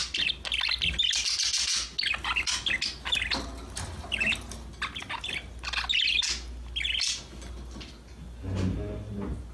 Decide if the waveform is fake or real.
real